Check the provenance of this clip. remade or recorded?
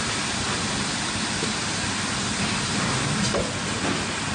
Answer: recorded